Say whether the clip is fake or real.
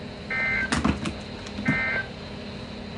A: real